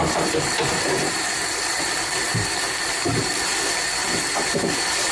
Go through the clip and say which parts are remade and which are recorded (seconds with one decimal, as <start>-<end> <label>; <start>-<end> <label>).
0.0-3.1 remade; 3.1-5.1 recorded